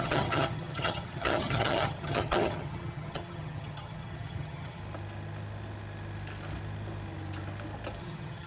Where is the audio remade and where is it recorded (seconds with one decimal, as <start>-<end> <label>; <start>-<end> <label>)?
0.0-4.8 remade; 4.8-8.0 recorded; 8.0-8.5 remade